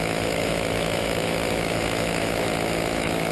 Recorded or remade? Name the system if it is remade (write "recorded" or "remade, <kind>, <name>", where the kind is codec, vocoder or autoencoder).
remade, autoencoder, DAC-VAE